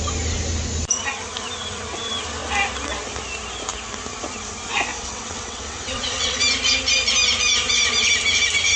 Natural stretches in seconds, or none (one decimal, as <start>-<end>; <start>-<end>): 0.0-4.9; 6.4-8.8